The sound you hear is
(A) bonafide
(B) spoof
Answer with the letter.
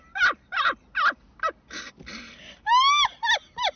A